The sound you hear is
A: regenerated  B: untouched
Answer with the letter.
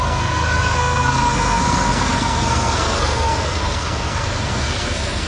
A